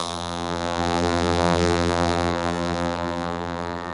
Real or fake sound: fake